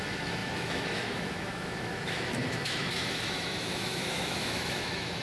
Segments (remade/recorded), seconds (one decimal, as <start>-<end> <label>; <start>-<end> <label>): 0.0-5.2 remade